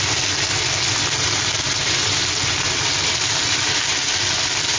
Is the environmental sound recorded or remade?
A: recorded